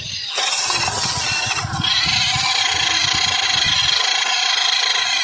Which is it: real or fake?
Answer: real